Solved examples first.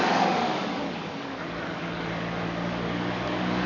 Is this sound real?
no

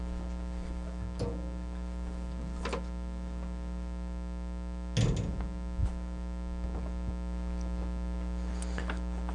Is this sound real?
yes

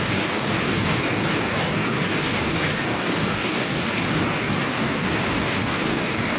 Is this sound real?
no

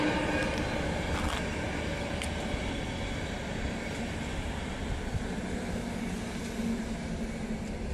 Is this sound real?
yes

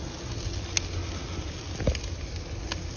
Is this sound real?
yes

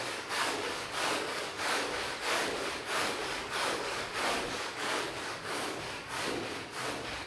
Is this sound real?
no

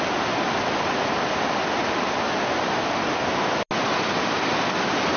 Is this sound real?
yes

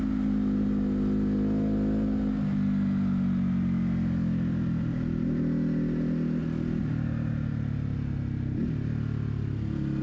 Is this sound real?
yes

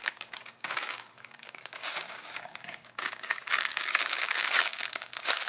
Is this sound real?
no